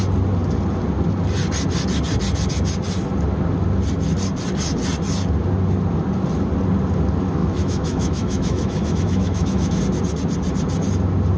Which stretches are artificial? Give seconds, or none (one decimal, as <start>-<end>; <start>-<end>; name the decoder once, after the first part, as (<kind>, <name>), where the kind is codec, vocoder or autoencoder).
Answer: 7.4-9.8 (autoencoder, DAC-VAE)